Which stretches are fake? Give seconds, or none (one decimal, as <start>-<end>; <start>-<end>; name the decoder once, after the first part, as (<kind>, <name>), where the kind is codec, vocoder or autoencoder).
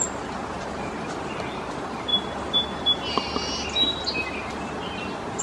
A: none